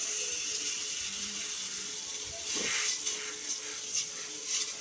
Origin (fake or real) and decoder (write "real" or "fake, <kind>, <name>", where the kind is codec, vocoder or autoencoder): real